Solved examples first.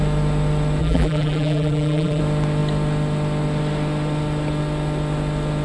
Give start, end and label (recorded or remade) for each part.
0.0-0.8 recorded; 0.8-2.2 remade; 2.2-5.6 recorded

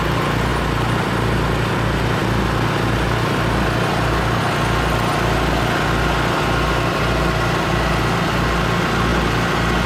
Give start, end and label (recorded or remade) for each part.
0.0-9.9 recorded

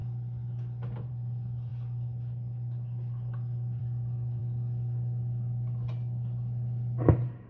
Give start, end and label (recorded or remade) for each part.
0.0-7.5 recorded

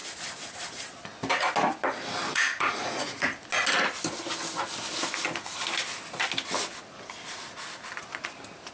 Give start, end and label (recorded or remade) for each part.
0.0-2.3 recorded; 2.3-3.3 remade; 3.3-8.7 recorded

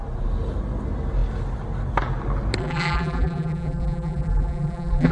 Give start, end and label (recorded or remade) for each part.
0.0-2.6 recorded; 2.6-5.1 remade

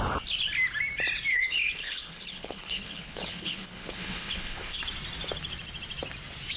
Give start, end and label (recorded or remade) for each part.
0.0-1.3 recorded; 1.3-4.8 remade; 4.8-6.6 recorded